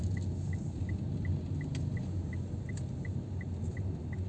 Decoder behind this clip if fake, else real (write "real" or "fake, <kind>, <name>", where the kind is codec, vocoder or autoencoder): real